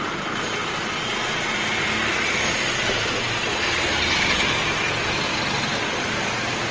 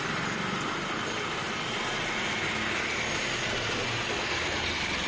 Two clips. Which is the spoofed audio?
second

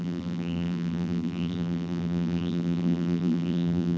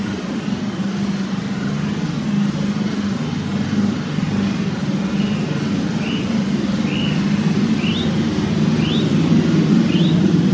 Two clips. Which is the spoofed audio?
first